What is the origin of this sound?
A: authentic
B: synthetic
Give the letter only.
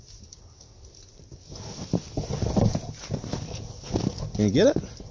A